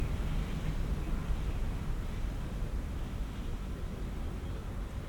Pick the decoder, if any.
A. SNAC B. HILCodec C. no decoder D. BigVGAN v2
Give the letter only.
C